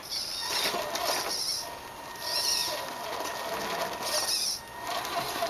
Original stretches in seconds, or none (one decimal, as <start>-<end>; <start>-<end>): 0.0-5.5